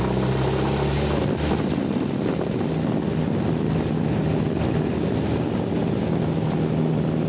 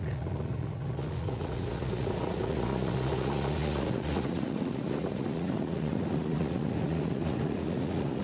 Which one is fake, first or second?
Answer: second